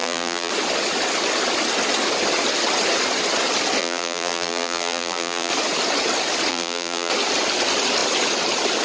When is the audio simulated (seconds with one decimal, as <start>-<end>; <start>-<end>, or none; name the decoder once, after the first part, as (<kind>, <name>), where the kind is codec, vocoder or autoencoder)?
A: 0.0-0.5 (vocoder, BigVGAN v2); 3.8-5.5; 6.5-7.1